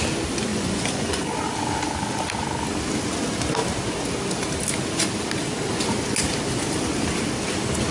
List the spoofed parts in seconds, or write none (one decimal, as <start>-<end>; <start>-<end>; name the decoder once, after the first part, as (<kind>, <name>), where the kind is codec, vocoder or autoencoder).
0.5-1.3 (vocoder, Vocos)